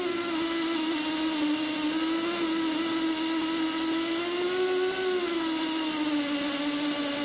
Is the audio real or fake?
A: real